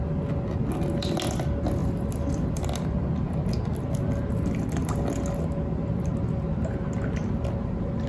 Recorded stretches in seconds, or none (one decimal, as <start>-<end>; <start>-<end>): 0.0-1.8; 2.5-8.1